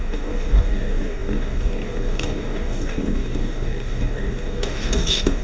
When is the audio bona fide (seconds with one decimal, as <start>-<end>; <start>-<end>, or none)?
none